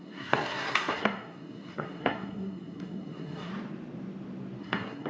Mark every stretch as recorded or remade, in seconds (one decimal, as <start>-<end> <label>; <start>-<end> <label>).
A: 0.0-3.5 remade; 3.5-4.6 recorded; 4.6-5.1 remade